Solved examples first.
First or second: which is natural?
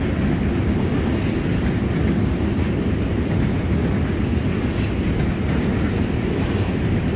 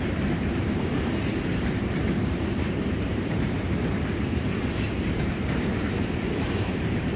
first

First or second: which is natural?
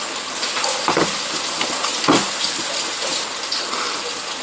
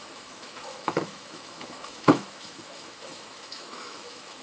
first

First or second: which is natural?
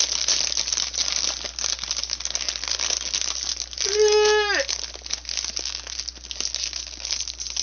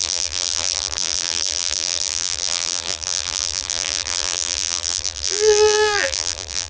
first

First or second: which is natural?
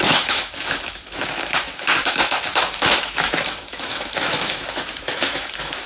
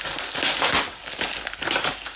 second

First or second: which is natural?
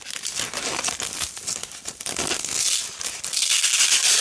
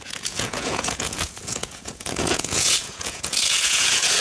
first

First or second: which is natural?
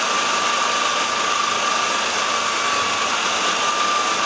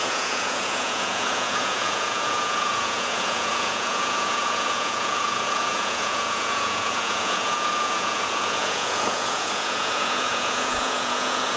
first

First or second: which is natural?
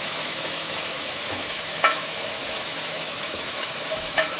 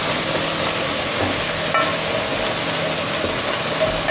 second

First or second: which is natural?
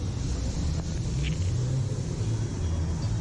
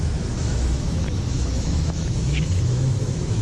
first